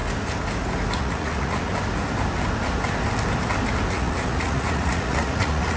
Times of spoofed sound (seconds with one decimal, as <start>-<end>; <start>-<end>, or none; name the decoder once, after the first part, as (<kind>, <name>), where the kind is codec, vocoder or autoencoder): 1.0-1.7 (vocoder, Vocos); 3.9-5.8